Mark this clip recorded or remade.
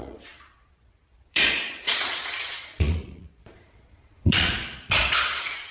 remade